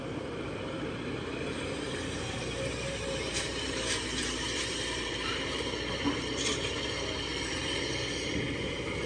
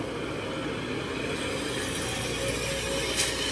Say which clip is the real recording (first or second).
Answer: second